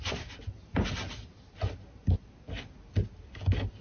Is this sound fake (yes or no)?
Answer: no